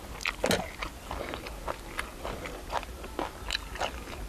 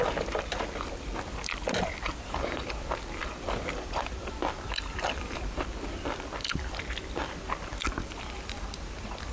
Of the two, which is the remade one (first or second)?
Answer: second